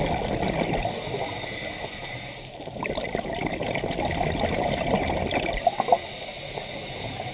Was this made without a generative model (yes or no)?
yes